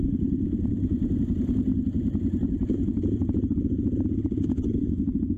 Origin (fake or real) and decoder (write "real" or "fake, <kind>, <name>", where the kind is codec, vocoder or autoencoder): real